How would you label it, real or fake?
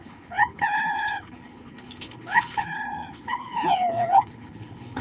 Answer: fake